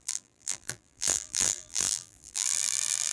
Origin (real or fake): fake